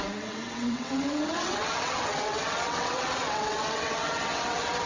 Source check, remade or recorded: remade